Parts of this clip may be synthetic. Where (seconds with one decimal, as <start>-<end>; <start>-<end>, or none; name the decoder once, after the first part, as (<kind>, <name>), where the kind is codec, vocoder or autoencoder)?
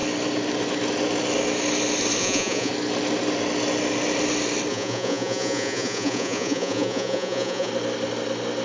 2.2-2.7 (vocoder, Vocos); 4.7-7.7